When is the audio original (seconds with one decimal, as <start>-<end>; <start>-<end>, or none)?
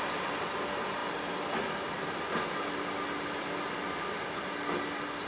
0.0-5.3